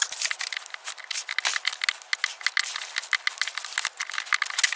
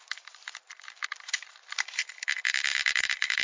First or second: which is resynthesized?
second